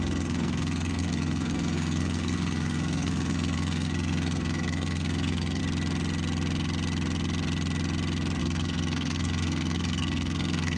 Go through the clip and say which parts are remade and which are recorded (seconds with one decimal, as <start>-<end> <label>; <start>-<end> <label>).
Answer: 0.0-5.6 remade; 5.6-8.4 recorded; 8.4-10.8 remade